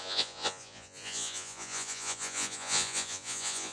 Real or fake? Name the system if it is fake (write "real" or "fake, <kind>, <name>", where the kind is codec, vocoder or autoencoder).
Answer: fake, vocoder, Vocos